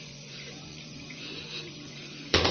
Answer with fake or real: fake